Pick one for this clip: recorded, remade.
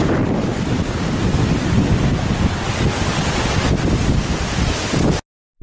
recorded